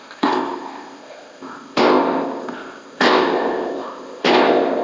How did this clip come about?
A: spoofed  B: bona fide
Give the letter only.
A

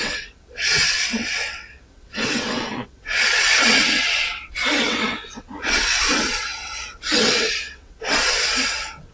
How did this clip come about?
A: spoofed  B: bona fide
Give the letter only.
A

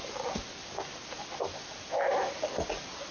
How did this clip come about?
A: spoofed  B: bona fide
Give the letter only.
B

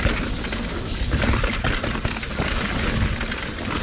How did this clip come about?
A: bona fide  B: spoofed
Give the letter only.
A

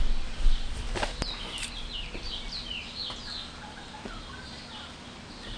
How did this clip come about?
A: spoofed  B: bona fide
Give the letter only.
B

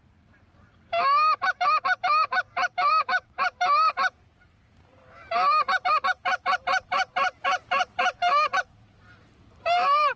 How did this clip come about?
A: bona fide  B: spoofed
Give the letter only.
B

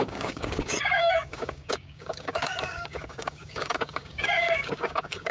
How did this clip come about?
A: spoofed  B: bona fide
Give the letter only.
A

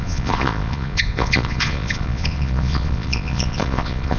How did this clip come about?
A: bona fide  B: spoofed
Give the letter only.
B